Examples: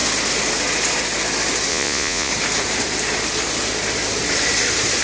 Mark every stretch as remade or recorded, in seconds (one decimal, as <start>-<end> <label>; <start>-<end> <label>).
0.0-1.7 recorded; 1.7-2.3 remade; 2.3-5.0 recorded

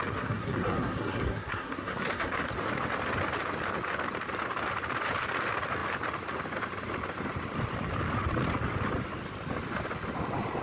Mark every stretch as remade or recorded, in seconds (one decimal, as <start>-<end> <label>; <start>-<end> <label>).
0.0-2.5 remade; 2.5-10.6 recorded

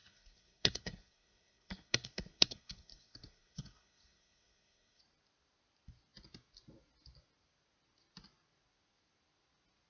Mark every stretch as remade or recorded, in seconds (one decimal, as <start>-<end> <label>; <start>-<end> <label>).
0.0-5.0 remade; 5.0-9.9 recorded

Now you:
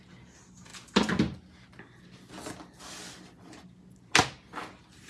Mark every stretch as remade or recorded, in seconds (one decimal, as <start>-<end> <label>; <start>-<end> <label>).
0.0-5.1 recorded

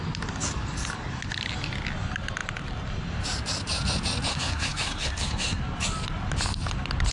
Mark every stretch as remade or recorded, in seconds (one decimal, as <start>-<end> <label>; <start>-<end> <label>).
0.0-4.3 recorded; 4.3-5.6 remade; 5.6-7.1 recorded

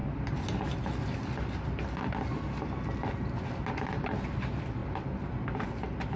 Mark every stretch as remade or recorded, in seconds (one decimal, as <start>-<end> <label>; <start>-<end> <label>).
0.0-6.2 recorded